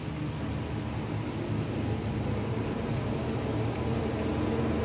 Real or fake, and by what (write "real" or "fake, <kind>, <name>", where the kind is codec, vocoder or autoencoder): real